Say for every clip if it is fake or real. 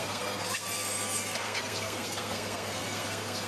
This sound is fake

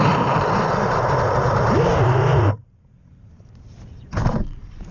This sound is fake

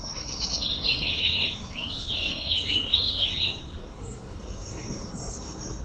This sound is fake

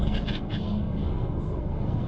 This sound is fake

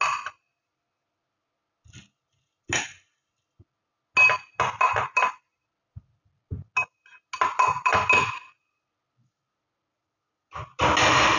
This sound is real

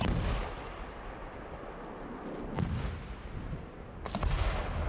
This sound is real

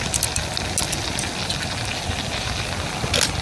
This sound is real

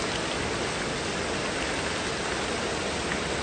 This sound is real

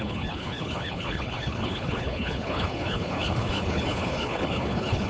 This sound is fake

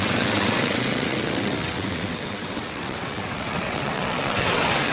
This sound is fake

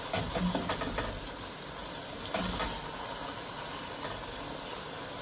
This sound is real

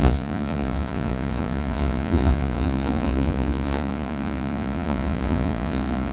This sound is fake